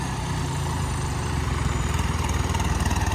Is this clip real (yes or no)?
no